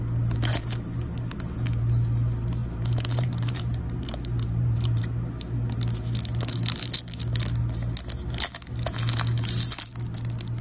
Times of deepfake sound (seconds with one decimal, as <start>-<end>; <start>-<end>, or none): 2.6-5.0